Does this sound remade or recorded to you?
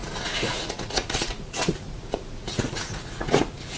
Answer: remade